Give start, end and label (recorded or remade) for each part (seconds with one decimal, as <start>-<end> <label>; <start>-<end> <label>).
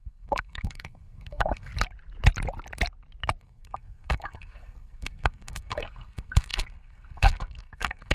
0.0-1.7 remade; 1.7-3.4 recorded; 3.4-8.1 remade